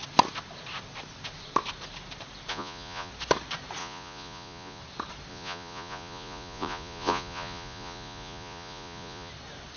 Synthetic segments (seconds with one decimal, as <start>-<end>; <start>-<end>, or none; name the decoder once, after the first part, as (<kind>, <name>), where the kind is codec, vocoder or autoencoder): 2.5-3.1 (vocoder, Vocos); 3.8-4.8; 5.3-9.3